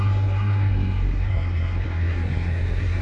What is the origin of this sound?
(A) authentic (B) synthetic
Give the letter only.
B